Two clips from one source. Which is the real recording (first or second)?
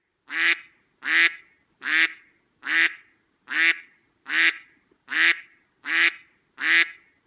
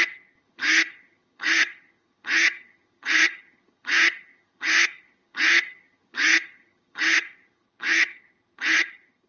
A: first